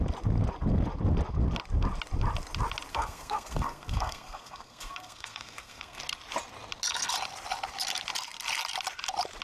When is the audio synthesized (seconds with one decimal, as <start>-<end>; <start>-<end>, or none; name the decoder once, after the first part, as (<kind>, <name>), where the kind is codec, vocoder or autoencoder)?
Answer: 2.9-6.0 (codec, SNAC)